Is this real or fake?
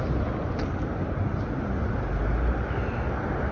real